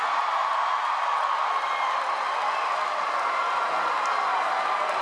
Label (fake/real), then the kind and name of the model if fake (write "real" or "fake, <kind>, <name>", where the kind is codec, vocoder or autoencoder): real